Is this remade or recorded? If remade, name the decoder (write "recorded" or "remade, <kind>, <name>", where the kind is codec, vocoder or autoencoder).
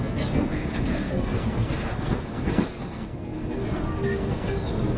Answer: remade, codec, SNAC